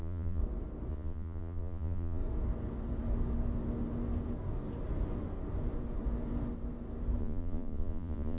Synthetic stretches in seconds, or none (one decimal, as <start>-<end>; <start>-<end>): 0.0-0.4; 0.9-2.2; 7.2-8.4